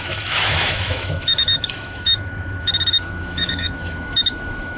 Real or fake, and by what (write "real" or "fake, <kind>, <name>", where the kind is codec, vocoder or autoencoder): fake, autoencoder, DAC-VAE